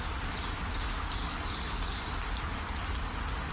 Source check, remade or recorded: recorded